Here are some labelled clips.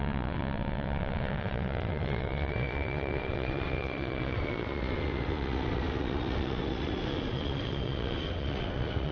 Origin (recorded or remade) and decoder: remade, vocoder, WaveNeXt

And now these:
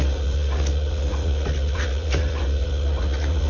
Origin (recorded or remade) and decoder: remade, vocoder, Vocos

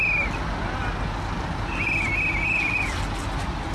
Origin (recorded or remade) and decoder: recorded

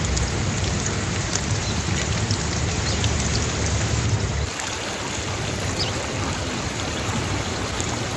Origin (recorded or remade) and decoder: recorded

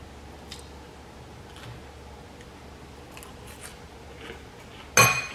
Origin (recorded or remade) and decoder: recorded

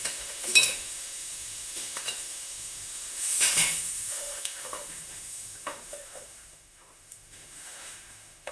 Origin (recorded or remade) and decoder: remade, autoencoder, DAC-VAE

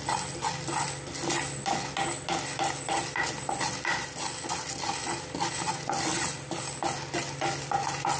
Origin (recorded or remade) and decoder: recorded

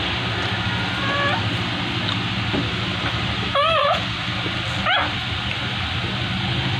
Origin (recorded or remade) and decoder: recorded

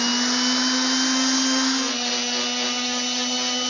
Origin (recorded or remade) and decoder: recorded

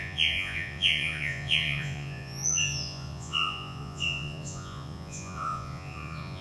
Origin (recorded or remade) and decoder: remade, vocoder, Vocos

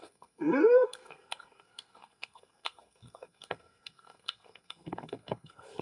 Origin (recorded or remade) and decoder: remade, codec, SNAC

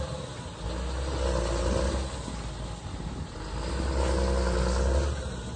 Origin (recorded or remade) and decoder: recorded